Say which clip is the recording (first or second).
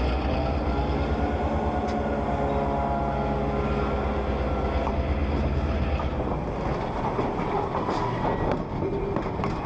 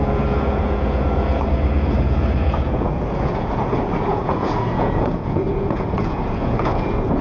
first